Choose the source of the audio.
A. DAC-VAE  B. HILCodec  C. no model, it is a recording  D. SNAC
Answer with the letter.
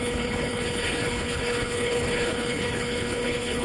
B